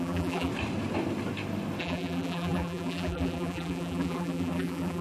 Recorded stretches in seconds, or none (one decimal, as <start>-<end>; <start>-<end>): 0.5-1.8